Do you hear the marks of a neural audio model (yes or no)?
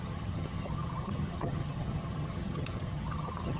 yes